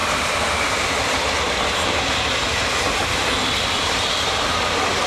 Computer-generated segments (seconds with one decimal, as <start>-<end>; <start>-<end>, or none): 0.0-2.0; 2.5-4.6

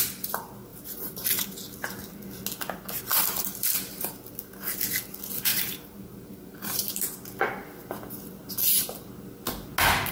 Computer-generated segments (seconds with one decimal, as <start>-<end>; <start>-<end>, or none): 0.7-1.4; 3.1-4.3; 5.5-6.9

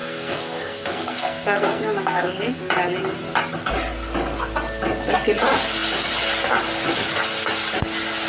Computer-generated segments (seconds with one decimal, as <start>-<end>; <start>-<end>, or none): 0.0-2.6

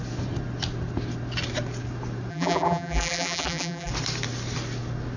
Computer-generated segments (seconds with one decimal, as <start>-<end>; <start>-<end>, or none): 2.3-3.9

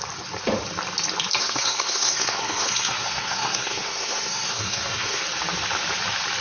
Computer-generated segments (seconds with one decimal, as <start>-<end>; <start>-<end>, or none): 1.4-5.2